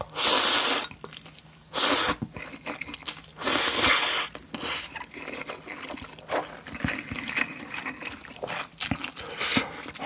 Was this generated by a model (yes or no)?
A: no